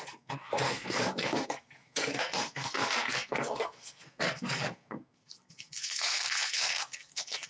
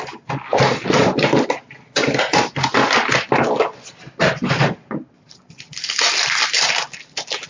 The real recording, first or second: second